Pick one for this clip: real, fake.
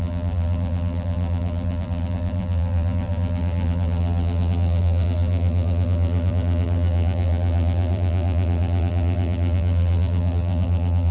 fake